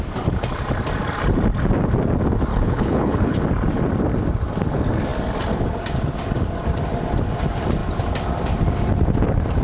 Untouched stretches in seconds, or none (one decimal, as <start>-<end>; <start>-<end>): 0.0-2.5; 3.4-9.6